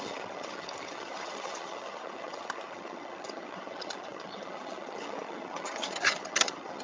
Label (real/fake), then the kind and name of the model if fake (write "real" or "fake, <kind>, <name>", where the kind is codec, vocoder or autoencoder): fake, vocoder, HiFi-GAN